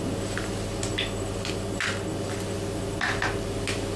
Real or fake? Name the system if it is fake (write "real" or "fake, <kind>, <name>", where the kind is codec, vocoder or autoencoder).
real